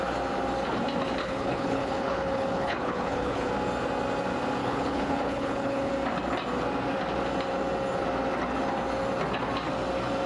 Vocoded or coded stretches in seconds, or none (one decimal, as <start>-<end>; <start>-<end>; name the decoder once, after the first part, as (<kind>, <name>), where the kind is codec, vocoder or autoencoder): 1.2-3.5 (codec, HILCodec); 4.6-5.9